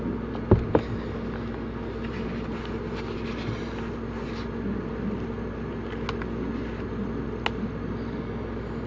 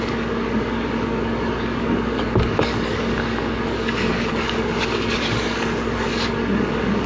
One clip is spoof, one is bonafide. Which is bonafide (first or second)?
first